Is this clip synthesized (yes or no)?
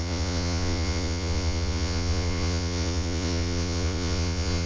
yes